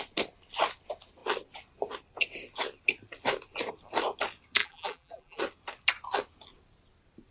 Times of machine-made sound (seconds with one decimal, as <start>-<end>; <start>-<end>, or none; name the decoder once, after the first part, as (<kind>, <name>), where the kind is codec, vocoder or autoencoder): 4.6-5.4 (vocoder, BigVGAN v2)